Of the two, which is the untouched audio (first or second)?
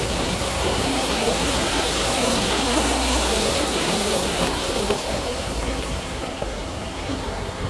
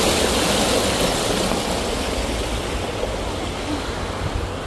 second